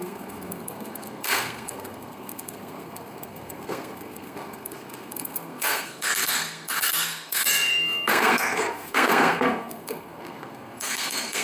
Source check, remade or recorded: remade